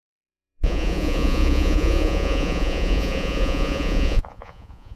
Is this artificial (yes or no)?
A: yes